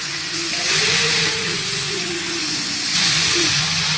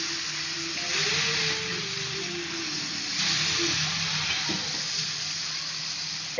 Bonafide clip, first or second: second